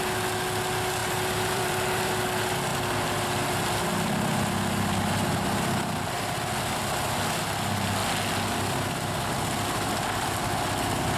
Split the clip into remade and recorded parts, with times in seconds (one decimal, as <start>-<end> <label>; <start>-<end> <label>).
0.0-1.0 recorded; 1.0-2.2 remade; 2.2-11.2 recorded

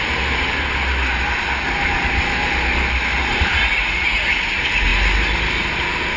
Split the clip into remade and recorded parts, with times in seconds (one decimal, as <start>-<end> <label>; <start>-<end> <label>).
0.0-3.7 recorded; 3.7-4.3 remade; 4.3-6.2 recorded

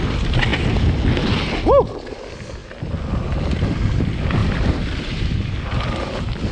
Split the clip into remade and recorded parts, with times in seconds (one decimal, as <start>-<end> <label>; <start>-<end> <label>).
0.0-6.5 recorded

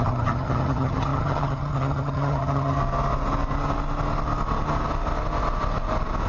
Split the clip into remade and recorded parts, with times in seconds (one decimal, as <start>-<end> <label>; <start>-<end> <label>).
0.0-2.8 remade; 2.8-6.3 recorded